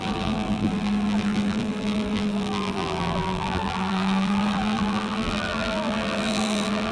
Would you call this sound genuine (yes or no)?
no